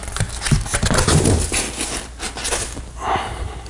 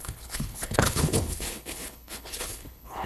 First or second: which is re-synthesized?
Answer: second